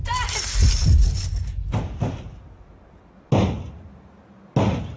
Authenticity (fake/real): real